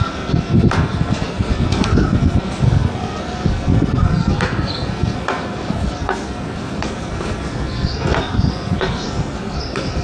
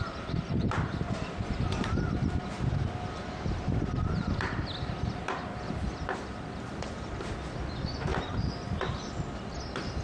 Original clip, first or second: second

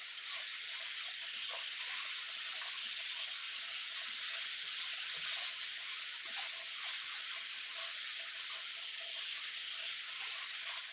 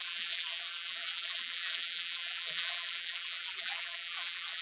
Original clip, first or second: first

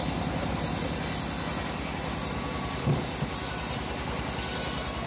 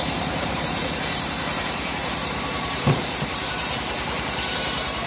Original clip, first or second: first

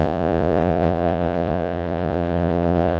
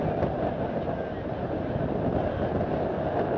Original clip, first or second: second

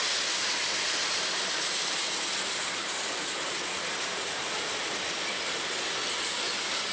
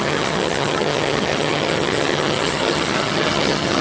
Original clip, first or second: first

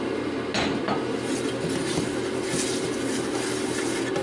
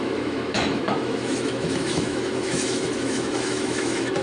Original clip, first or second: first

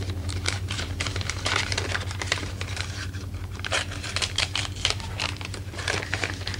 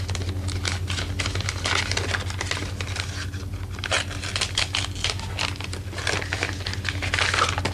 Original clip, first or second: second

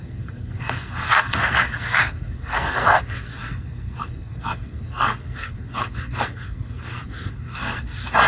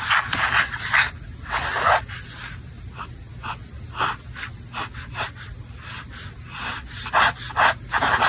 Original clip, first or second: second